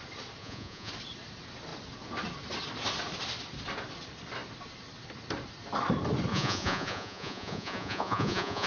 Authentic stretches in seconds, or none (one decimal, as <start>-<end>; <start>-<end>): 0.0-0.4; 0.9-6.3